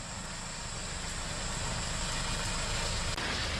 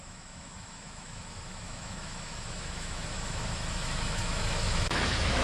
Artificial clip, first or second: second